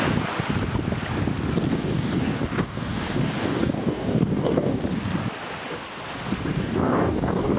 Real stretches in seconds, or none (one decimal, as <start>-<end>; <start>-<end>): 0.0-1.7; 4.8-6.5